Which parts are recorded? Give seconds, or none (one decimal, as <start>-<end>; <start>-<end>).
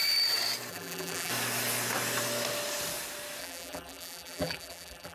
0.0-0.7; 1.3-3.4